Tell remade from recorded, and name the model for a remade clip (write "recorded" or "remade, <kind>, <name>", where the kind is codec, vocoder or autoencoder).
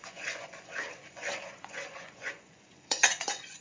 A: remade, vocoder, Vocos